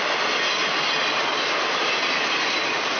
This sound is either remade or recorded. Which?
recorded